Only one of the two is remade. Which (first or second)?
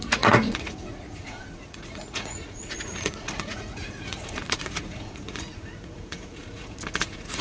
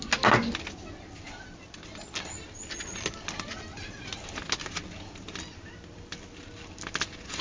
first